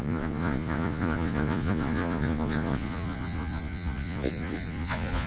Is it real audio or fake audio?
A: fake